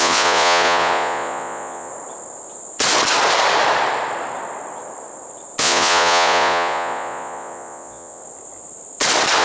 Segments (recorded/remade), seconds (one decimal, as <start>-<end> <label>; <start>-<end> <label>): 0.0-1.9 remade; 1.9-5.6 recorded; 5.6-8.2 remade; 8.2-9.4 recorded